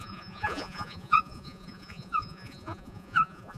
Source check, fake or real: fake